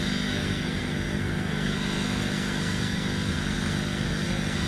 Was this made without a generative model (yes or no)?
no